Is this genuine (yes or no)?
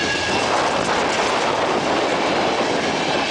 yes